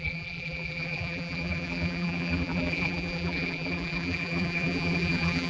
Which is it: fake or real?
fake